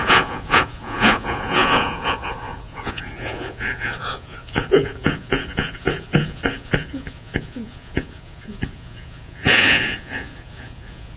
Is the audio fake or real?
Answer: fake